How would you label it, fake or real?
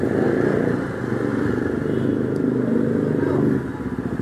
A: real